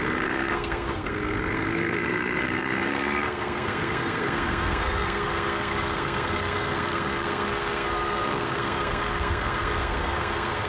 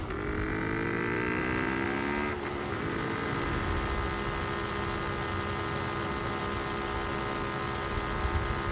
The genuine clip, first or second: second